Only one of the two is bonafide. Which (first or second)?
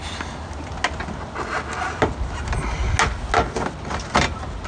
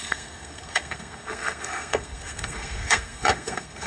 first